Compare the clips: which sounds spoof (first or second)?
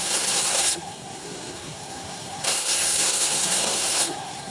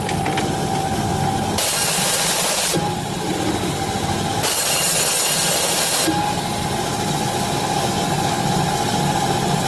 first